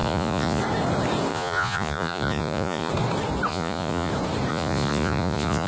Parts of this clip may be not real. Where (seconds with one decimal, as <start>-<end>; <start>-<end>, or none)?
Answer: 0.0-0.6; 1.3-2.9; 3.5-4.1; 4.5-5.7